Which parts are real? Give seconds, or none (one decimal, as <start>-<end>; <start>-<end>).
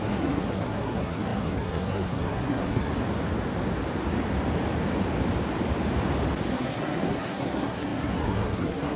2.9-6.5